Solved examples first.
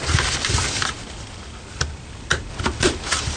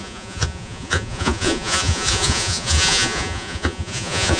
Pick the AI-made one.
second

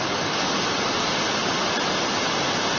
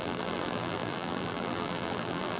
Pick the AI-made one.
second